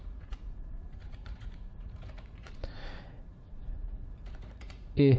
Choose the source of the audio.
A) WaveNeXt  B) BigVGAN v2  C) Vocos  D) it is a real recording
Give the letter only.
C